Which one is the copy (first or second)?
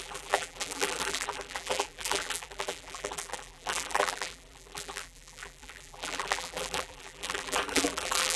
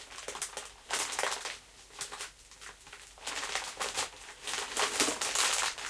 first